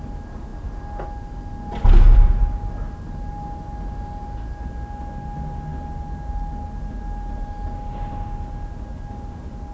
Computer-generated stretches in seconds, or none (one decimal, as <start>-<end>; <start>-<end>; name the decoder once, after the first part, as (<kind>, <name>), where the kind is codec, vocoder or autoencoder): none